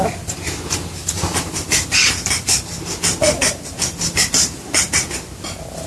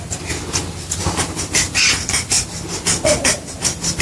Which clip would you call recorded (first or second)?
second